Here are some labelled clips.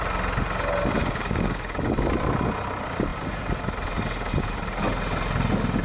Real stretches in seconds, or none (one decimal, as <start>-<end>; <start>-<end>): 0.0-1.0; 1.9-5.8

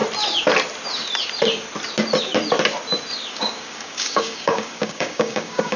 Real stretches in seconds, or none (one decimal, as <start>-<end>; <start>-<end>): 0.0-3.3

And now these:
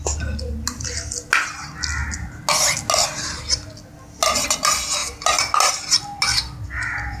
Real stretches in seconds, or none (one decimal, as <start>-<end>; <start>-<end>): 0.0-7.2

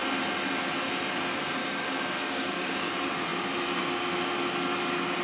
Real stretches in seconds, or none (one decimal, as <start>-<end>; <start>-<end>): 0.0-1.6; 2.9-5.2

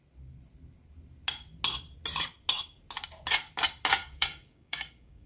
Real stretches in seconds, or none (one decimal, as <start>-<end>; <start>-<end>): 0.0-4.0

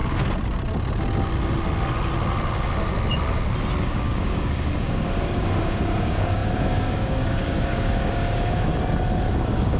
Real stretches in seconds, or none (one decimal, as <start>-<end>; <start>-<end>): 0.0-3.8; 8.7-9.3